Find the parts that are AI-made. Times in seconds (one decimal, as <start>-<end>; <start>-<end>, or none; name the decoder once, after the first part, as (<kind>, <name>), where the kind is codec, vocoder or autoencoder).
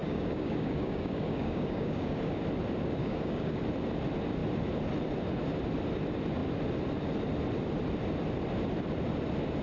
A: 0.0-2.4 (codec, DAC); 3.0-3.6